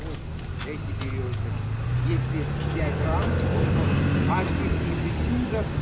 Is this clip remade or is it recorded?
recorded